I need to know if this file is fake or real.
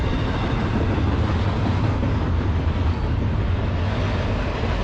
real